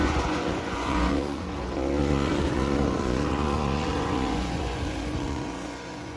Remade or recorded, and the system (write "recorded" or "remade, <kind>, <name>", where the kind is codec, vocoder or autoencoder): remade, vocoder, Vocos